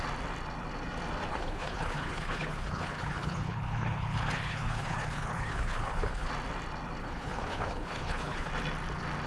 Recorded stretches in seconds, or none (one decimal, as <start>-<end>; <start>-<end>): 0.0-1.3; 6.3-7.0; 8.5-9.3